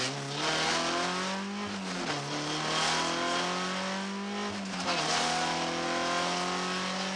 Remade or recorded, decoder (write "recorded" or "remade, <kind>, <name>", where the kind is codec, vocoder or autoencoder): recorded